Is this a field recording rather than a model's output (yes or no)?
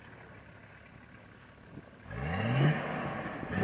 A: yes